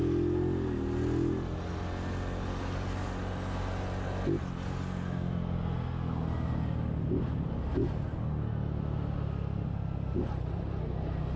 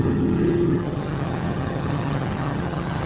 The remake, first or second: second